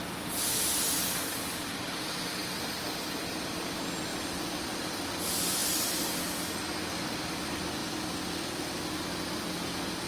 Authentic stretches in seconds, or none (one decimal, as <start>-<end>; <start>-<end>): 0.0-4.1; 5.6-10.1